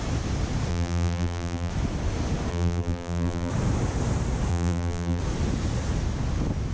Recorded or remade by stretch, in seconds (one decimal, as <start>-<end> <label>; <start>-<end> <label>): 0.0-0.7 recorded; 0.7-1.7 remade; 1.7-2.5 recorded; 2.5-3.5 remade; 3.5-4.5 recorded; 4.5-5.2 remade; 5.2-6.7 recorded